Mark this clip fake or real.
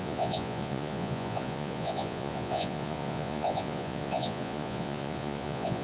fake